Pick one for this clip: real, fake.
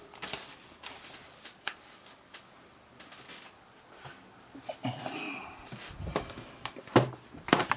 fake